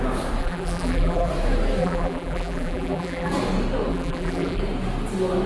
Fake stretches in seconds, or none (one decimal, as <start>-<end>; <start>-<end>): 0.4-1.3; 1.8-3.3; 3.9-4.6